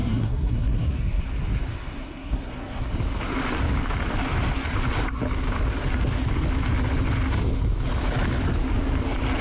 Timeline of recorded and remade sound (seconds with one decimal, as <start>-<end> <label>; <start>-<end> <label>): 0.0-1.2 remade; 1.2-1.7 recorded; 1.7-2.9 remade; 2.9-9.4 recorded